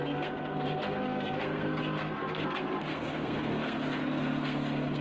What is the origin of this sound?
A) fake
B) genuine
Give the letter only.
A